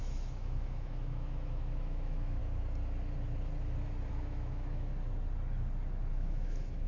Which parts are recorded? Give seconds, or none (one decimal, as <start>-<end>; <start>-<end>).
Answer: 2.4-4.1; 4.9-6.1